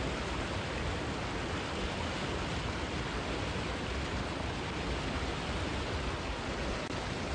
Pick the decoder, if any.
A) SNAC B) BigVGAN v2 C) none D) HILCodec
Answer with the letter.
C